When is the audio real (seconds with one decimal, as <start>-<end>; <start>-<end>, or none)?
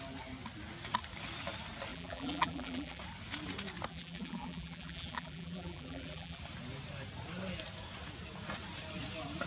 0.0-1.9; 3.0-3.9; 6.4-9.5